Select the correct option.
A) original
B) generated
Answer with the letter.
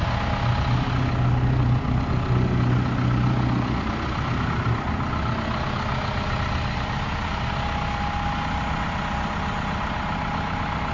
A